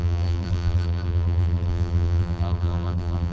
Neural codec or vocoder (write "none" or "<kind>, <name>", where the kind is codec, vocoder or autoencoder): vocoder, BigVGAN v2